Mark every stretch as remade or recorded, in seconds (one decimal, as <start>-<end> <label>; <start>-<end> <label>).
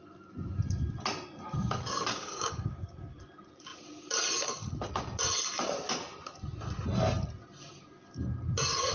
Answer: 0.0-2.1 recorded; 2.1-3.2 remade; 3.2-8.9 recorded